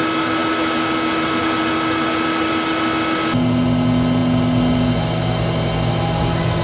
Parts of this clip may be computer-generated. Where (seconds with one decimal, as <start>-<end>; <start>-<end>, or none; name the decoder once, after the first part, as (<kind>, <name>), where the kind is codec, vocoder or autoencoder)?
none